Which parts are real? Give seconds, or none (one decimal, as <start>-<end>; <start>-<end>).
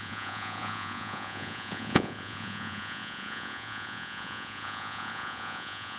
none